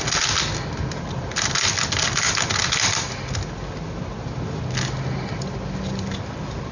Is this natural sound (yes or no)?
yes